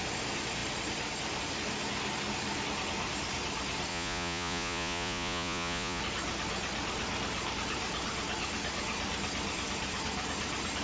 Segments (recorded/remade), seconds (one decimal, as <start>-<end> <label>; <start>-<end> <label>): 0.0-3.9 recorded; 3.9-6.0 remade; 6.0-10.8 recorded